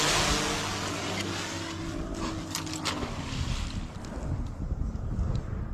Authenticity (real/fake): real